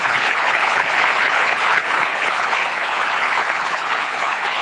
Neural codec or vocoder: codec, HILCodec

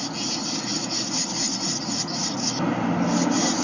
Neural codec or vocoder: none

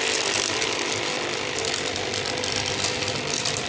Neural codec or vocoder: none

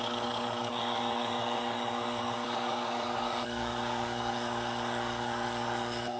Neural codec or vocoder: codec, DAC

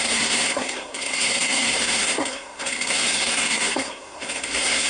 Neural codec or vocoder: codec, SNAC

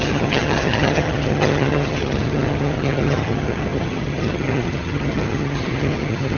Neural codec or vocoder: vocoder, HiFi-GAN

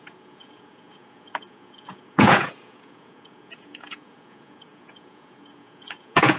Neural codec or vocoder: vocoder, Vocos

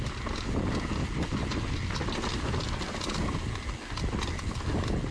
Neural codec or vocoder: none